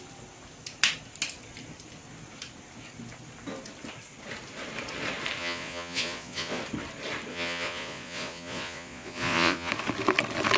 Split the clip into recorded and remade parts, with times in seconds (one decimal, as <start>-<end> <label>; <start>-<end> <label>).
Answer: 0.0-5.4 recorded; 5.4-6.6 remade; 6.6-7.3 recorded; 7.3-9.7 remade; 9.7-10.6 recorded